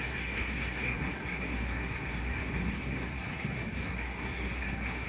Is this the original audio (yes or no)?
no